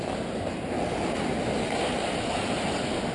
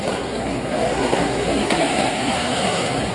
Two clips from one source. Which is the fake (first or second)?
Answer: second